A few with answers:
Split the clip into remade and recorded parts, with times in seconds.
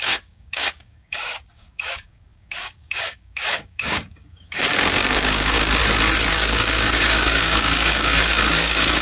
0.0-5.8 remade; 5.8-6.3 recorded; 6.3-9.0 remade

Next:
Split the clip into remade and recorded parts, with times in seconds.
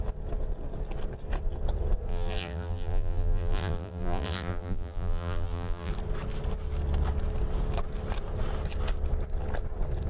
0.0-2.1 recorded; 2.1-5.9 remade; 5.9-10.1 recorded